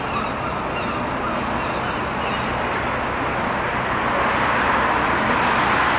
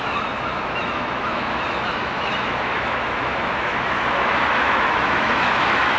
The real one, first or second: first